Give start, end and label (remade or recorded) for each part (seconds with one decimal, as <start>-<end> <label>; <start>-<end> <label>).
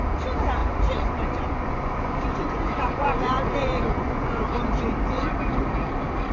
0.0-0.6 recorded; 0.6-4.4 remade; 4.4-6.3 recorded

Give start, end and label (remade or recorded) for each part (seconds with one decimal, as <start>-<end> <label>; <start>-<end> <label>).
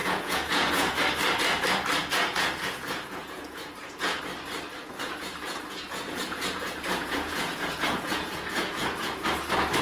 0.0-1.0 remade; 1.0-2.0 recorded; 2.0-4.2 remade; 4.2-4.8 recorded; 4.8-9.2 remade; 9.2-9.8 recorded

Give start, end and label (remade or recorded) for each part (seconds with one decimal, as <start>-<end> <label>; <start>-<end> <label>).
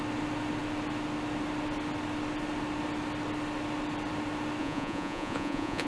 0.0-4.6 recorded; 4.6-5.9 remade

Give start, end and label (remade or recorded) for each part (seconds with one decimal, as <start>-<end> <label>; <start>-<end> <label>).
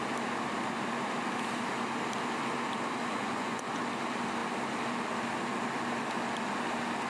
0.0-3.1 recorded; 3.1-3.8 remade; 3.8-7.1 recorded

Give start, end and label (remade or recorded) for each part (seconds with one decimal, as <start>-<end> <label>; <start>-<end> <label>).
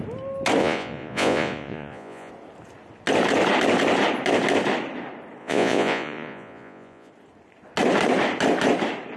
0.0-0.6 recorded; 0.6-2.3 remade; 2.3-5.4 recorded; 5.4-7.1 remade; 7.1-9.2 recorded